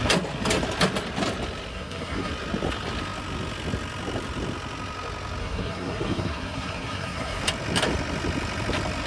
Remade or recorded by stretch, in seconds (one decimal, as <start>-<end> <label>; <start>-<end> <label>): 0.0-1.7 recorded; 1.7-2.3 remade; 2.3-5.4 recorded; 5.4-7.4 remade; 7.4-9.1 recorded